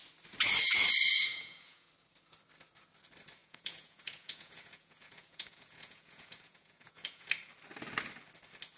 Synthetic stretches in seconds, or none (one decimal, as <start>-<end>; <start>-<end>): 1.3-1.9; 3.4-7.3